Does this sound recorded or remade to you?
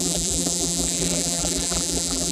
remade